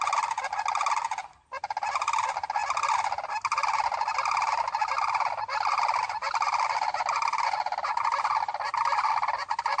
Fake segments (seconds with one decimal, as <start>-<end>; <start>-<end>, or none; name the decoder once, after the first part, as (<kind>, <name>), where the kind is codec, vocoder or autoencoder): none